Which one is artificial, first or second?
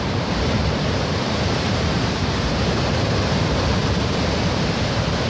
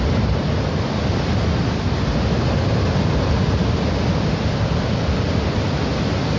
first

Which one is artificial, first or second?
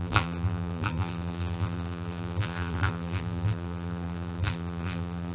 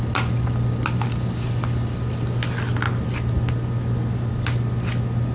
first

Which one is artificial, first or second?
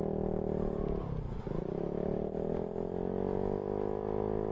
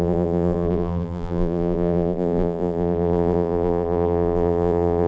second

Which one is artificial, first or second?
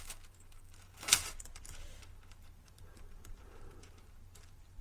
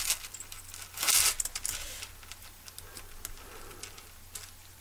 first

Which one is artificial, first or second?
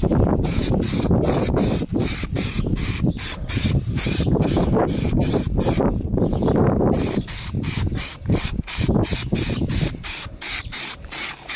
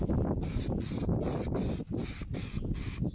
first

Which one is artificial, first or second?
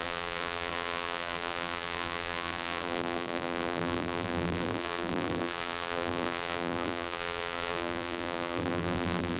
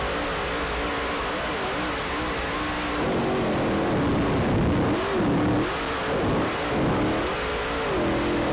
first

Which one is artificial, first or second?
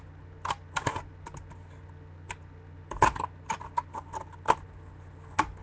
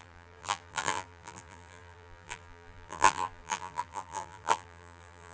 second